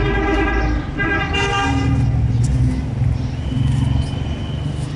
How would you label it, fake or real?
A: real